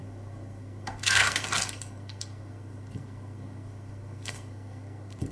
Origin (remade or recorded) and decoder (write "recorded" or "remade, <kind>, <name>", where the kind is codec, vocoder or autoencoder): remade, codec, SNAC